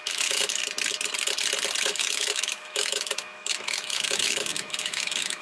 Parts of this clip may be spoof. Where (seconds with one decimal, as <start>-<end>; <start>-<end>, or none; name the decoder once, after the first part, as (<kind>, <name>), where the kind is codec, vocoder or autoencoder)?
0.0-0.6 (autoencoder, DAC-VAE); 1.8-5.4